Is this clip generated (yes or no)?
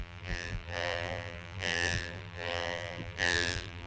yes